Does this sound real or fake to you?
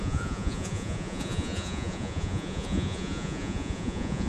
fake